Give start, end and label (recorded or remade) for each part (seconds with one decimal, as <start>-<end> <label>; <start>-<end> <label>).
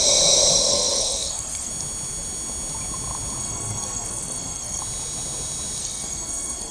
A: 0.0-0.7 recorded; 0.7-1.7 remade; 1.7-3.4 recorded; 3.4-4.8 remade; 4.8-5.8 recorded; 5.8-6.7 remade